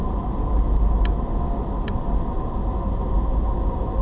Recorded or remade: recorded